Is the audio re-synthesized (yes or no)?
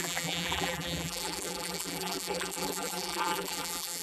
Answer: yes